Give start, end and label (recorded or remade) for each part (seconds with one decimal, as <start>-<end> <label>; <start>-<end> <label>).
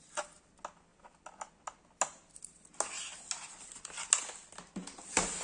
0.0-5.4 recorded